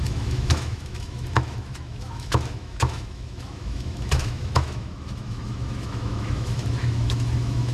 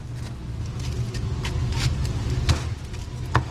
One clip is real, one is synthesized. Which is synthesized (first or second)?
first